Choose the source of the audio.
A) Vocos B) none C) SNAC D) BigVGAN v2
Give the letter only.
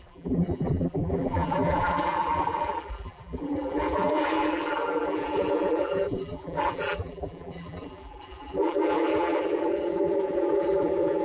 D